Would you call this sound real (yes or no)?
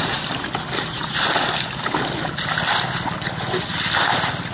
yes